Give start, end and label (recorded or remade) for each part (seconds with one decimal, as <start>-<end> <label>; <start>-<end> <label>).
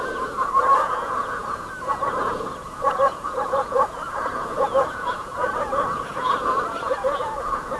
0.0-7.8 remade